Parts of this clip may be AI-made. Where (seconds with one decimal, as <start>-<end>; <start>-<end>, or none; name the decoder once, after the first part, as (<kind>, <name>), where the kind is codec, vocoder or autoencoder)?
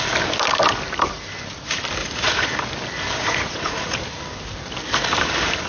2.0-2.5 (vocoder, Vocos); 3.2-4.2